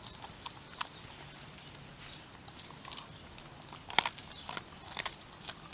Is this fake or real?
real